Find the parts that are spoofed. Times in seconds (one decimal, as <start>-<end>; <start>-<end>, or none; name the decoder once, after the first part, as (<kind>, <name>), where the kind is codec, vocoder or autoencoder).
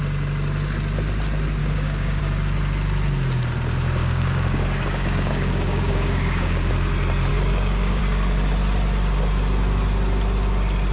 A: 1.6-2.2 (codec, DAC); 4.0-6.7; 7.3-8.0